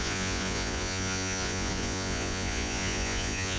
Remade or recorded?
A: remade